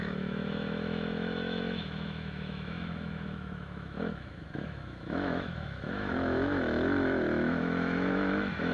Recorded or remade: remade